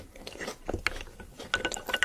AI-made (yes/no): no